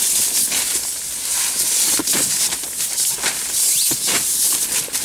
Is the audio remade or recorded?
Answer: recorded